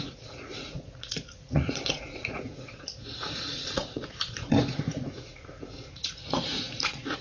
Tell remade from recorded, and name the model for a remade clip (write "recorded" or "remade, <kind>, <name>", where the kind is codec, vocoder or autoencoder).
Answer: remade, vocoder, Vocos